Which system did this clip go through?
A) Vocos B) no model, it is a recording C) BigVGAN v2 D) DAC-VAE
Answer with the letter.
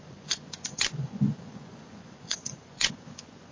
A